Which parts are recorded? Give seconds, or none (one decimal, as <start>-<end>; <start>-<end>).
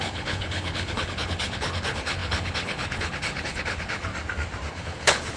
4.1-4.7